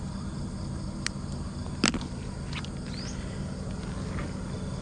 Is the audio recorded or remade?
recorded